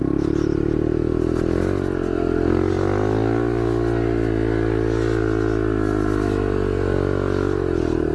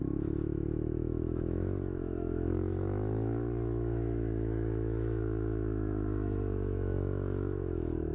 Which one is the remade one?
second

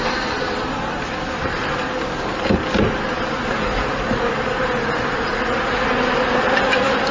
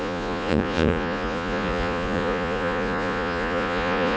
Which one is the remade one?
second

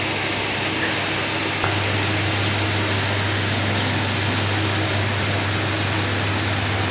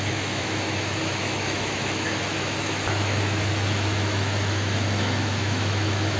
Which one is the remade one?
second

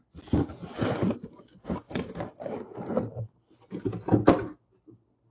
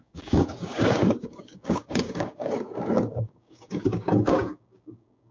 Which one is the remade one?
second